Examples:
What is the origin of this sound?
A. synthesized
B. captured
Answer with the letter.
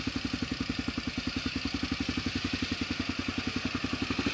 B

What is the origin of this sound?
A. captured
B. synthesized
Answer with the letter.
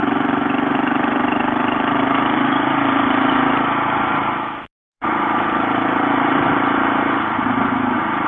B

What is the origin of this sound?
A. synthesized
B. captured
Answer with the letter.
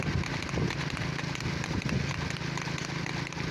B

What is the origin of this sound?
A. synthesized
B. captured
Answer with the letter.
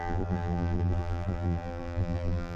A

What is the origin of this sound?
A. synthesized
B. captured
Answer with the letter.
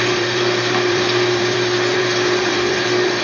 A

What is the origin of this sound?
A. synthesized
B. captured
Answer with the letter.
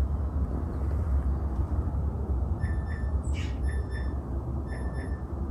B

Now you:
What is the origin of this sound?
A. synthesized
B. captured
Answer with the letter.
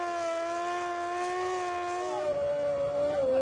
B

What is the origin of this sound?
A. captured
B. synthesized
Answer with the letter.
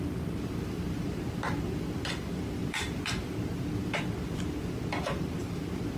B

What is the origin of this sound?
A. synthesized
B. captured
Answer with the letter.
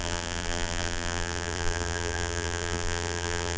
A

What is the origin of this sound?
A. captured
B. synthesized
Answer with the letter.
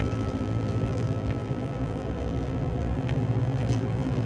B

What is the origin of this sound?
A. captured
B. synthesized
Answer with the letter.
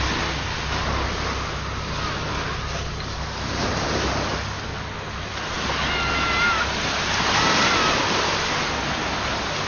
A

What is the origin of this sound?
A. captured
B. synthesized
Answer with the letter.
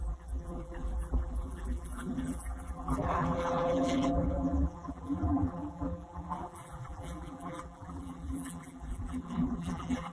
B